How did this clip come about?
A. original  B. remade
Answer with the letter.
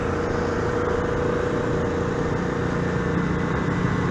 A